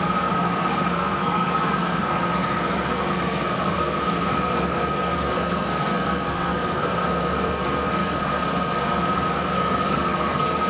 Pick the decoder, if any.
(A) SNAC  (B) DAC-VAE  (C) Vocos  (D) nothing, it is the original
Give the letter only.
A